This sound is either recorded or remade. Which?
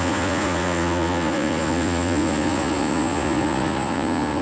remade